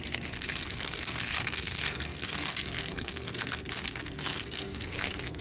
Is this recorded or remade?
remade